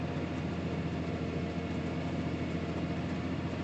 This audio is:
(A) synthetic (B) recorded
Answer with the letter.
B